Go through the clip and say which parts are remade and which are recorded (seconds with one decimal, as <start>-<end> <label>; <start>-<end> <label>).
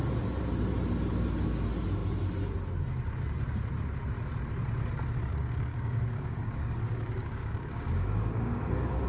0.0-5.3 recorded; 5.3-9.1 remade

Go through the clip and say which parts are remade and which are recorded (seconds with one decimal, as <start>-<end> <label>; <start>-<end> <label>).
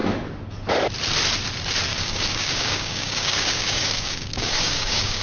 0.0-1.9 recorded; 1.9-5.2 remade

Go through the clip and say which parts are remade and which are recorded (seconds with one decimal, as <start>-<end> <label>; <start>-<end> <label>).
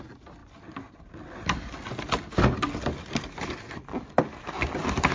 0.0-5.1 recorded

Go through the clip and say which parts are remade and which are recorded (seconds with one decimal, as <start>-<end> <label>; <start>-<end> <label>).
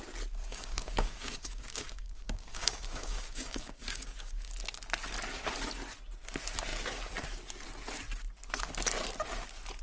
0.0-0.4 recorded; 0.4-4.5 remade; 4.5-9.8 recorded